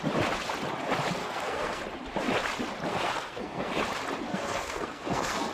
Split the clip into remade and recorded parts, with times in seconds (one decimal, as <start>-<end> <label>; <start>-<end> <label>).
0.0-1.2 recorded; 1.2-1.8 remade; 1.8-2.9 recorded; 2.9-3.7 remade; 3.7-4.3 recorded; 4.3-5.5 remade